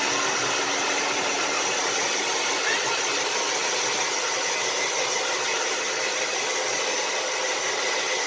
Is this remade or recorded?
recorded